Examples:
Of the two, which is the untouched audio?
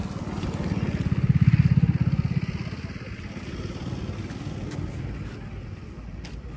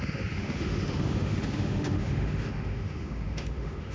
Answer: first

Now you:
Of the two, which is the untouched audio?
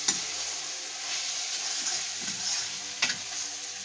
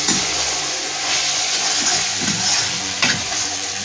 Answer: first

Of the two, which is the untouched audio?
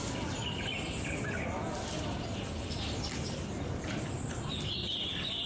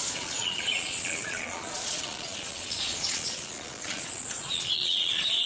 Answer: first